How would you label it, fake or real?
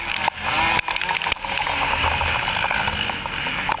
real